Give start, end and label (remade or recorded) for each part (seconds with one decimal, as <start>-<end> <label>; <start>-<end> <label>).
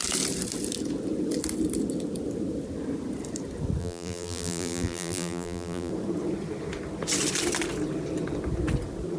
0.0-3.8 recorded; 3.8-5.9 remade; 5.9-9.2 recorded